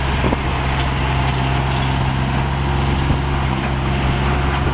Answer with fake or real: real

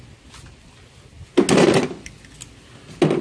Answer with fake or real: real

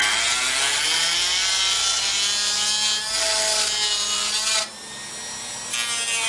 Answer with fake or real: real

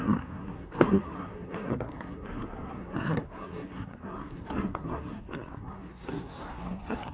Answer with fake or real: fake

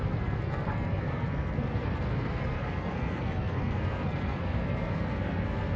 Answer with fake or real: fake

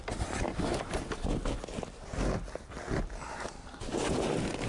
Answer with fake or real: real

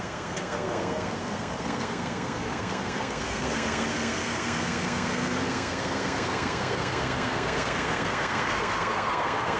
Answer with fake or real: fake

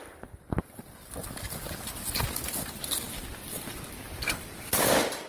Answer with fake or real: real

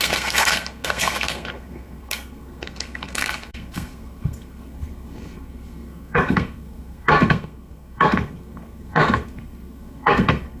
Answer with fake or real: fake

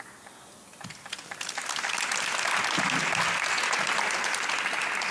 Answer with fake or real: real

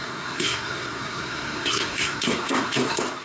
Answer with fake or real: fake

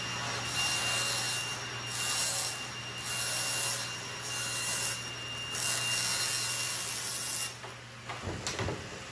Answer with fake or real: real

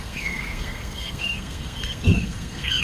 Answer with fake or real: fake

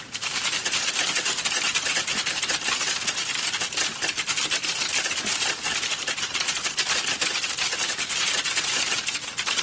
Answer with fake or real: real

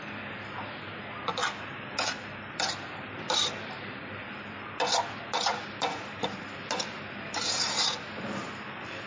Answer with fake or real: real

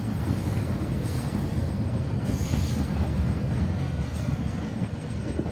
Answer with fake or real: fake